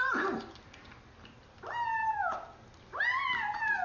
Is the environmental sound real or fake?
real